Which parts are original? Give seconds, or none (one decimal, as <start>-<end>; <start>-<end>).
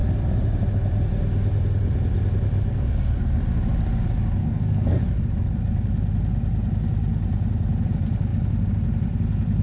0.0-2.7; 3.4-4.4; 5.0-9.6